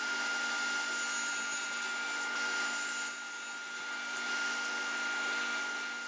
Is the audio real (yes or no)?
yes